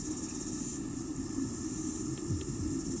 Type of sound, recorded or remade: recorded